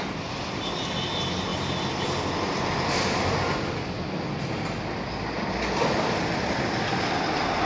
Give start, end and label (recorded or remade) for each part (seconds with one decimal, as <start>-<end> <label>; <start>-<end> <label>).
0.0-7.7 recorded